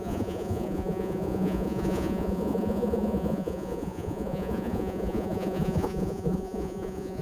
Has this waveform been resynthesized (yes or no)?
yes